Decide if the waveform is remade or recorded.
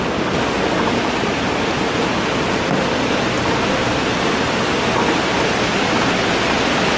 recorded